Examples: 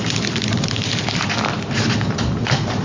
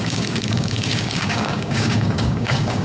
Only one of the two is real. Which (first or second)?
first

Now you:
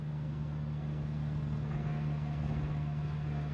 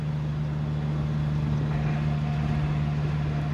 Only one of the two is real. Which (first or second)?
second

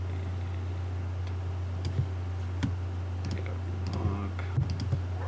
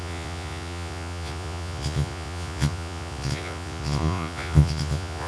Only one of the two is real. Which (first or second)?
first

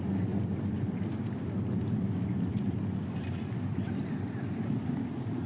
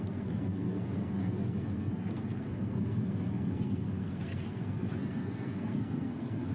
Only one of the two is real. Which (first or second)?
first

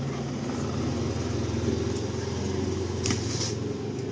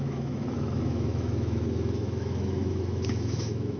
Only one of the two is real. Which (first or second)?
first